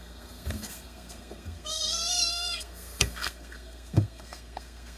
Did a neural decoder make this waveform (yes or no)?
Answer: yes